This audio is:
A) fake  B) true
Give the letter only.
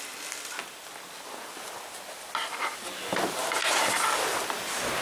B